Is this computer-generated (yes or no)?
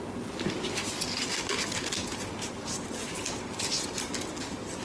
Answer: no